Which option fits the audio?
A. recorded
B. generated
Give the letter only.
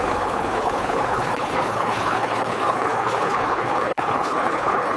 B